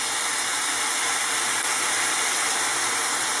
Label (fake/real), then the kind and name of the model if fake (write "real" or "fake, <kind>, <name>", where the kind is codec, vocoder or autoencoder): real